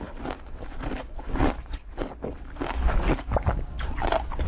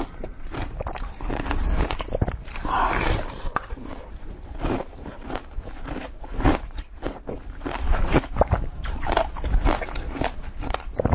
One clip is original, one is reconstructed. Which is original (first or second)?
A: first